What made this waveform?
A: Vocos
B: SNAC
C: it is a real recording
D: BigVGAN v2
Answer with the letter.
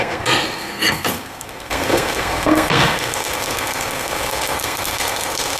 B